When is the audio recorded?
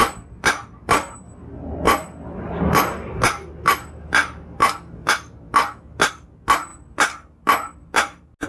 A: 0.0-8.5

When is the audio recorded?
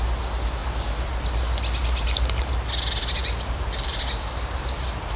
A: 0.0-0.6; 1.1-1.8; 2.5-3.2; 3.9-5.2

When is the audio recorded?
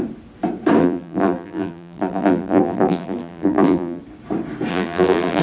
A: 0.0-0.8; 4.0-4.7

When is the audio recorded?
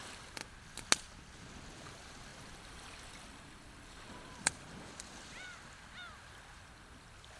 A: 0.4-1.8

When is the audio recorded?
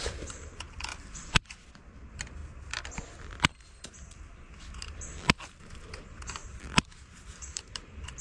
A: 2.4-4.6; 6.4-7.4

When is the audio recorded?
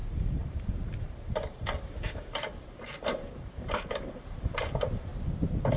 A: 5.1-5.8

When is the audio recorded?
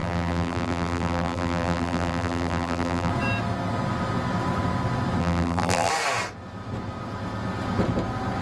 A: 3.1-5.2; 5.9-8.4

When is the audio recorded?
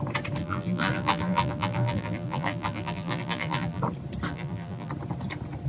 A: 0.0-0.4; 3.8-4.3; 4.9-5.7